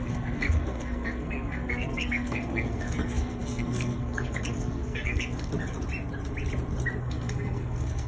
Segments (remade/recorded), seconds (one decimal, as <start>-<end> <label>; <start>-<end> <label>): 0.0-5.5 remade; 5.5-7.0 recorded; 7.0-8.1 remade